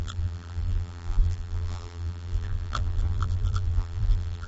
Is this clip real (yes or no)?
no